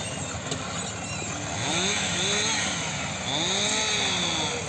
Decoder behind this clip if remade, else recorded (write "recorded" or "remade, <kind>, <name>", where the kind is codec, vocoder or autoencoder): recorded